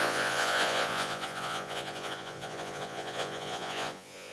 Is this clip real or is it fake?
fake